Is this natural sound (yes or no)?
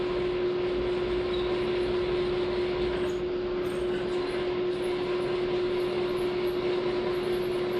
yes